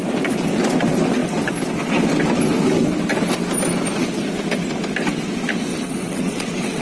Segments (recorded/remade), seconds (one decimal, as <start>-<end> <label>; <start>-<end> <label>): 0.0-5.7 recorded; 5.7-6.8 remade